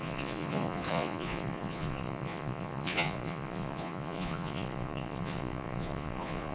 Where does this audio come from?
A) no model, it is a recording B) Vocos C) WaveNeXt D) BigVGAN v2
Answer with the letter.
B